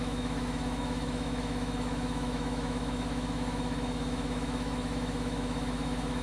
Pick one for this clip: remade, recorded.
remade